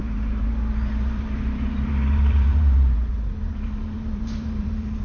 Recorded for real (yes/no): no